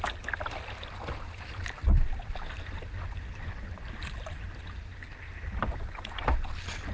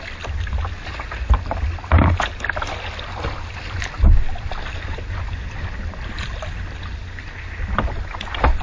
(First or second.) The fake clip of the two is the first